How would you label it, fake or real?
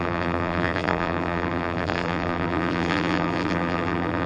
fake